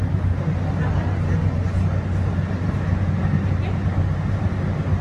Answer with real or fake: real